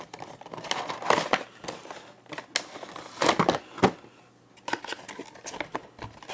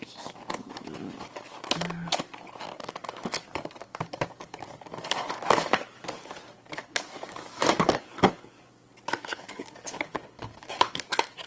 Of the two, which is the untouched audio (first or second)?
first